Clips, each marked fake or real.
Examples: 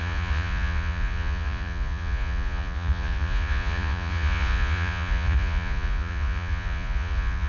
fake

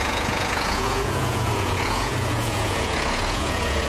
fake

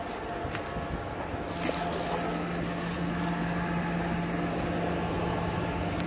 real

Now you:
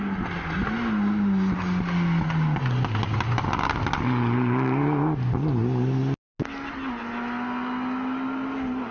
real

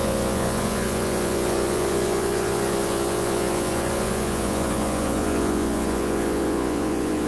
fake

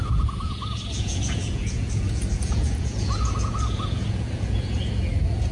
fake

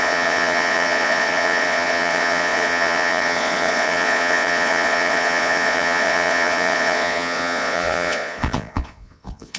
fake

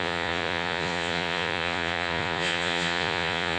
fake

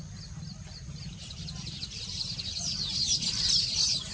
real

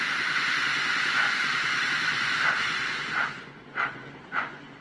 fake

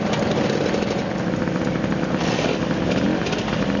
real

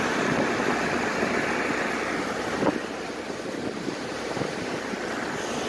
real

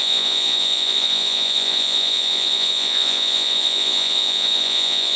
fake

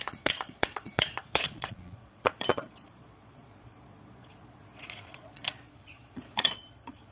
fake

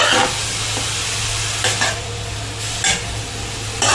real